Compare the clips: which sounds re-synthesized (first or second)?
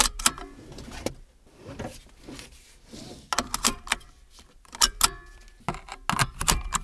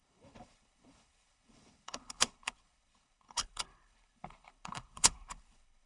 second